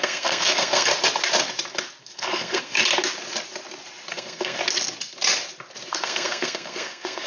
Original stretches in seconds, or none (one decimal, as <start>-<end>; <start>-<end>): 0.9-2.0; 2.8-4.1; 4.6-5.9